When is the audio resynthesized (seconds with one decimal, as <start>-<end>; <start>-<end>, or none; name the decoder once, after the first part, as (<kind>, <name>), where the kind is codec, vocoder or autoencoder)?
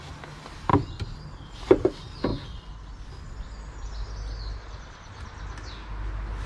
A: none